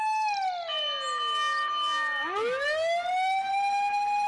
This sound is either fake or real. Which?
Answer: real